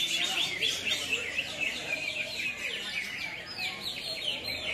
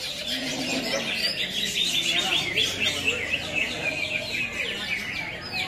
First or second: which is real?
second